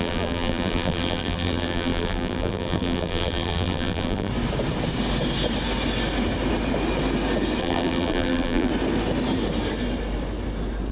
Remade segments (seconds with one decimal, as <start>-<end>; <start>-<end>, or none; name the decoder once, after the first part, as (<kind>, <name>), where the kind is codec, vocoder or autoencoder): 0.0-4.3 (vocoder, BigVGAN v2); 7.6-8.7